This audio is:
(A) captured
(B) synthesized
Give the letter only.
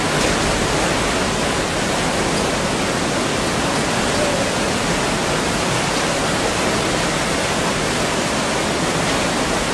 A